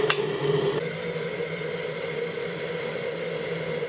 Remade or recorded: recorded